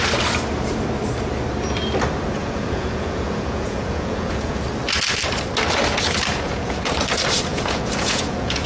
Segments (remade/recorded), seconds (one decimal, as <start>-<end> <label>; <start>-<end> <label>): 0.0-2.4 recorded; 2.4-4.6 remade; 4.6-6.3 recorded; 6.3-6.9 remade; 6.9-7.5 recorded; 7.5-8.7 remade